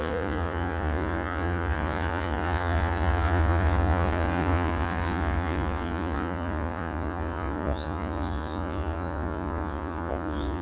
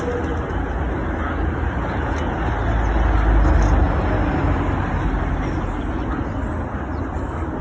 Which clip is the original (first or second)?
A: second